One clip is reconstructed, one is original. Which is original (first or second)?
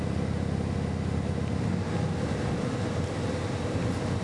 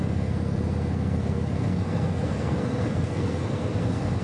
first